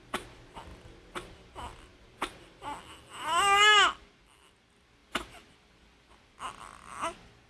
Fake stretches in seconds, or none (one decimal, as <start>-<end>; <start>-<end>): none